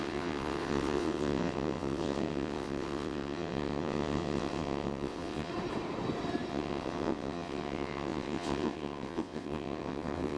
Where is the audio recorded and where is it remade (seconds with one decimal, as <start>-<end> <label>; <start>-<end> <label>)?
0.0-5.5 remade; 5.5-6.5 recorded; 6.5-10.4 remade

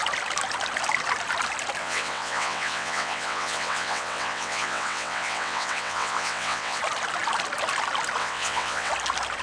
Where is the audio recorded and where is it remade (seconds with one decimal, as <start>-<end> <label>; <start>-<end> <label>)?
0.0-1.8 recorded; 1.8-6.8 remade; 6.8-8.2 recorded; 8.2-8.9 remade; 8.9-9.4 recorded

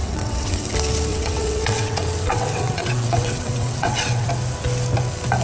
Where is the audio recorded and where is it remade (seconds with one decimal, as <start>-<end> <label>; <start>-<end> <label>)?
0.0-0.6 remade; 0.6-1.1 recorded; 1.1-4.3 remade; 4.3-5.4 recorded

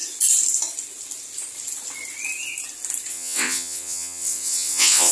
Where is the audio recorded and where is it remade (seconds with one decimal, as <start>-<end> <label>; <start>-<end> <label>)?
0.0-3.1 recorded; 3.1-5.1 remade

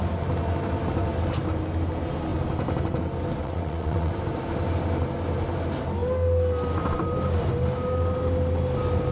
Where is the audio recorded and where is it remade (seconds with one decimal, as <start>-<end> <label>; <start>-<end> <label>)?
0.0-3.4 recorded; 3.4-4.1 remade; 4.1-9.1 recorded

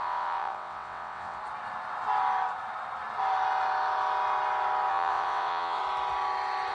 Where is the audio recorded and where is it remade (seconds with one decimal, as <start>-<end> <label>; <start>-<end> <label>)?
0.0-1.4 remade; 1.4-4.9 recorded; 4.9-5.8 remade; 5.8-6.7 recorded